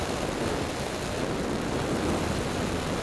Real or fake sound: real